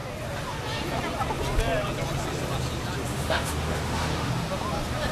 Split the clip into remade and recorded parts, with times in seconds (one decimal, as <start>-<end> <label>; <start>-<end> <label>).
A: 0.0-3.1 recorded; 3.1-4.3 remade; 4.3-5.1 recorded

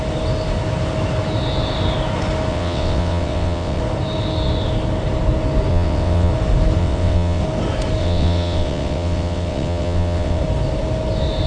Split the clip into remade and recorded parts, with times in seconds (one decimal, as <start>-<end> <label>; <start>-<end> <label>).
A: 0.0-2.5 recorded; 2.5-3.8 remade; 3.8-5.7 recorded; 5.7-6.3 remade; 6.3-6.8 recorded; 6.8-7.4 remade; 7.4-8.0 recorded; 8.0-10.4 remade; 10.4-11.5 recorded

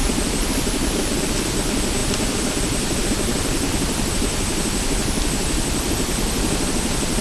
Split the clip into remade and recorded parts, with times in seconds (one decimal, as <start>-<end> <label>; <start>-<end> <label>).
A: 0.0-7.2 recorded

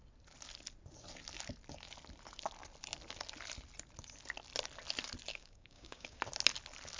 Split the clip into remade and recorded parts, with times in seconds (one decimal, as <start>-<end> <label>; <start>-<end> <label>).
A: 0.0-5.3 recorded; 5.3-6.2 remade; 6.2-7.0 recorded

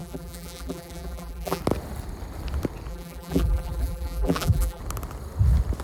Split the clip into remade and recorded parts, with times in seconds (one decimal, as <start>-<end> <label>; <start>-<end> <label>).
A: 0.0-1.6 remade; 1.6-2.9 recorded; 2.9-4.8 remade; 4.8-5.8 recorded

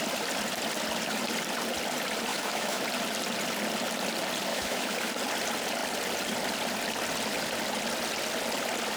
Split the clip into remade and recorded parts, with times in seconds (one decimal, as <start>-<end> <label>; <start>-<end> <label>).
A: 0.0-2.3 recorded; 2.3-2.8 remade; 2.8-4.5 recorded; 4.5-5.1 remade; 5.1-9.0 recorded

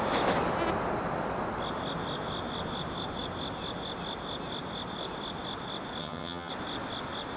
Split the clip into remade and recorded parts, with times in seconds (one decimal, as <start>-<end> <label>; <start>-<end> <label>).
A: 0.0-6.0 recorded; 6.0-6.5 remade; 6.5-7.4 recorded

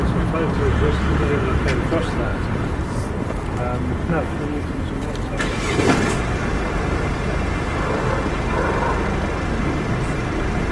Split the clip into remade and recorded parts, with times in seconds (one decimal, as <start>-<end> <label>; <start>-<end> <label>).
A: 0.0-2.3 recorded; 2.3-3.0 remade; 3.0-10.7 recorded